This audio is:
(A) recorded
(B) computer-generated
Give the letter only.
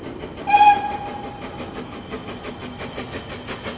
A